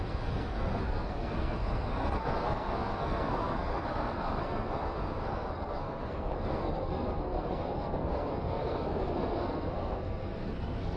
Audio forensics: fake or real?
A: fake